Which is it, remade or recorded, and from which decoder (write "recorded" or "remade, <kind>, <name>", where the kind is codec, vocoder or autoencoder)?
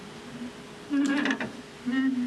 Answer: recorded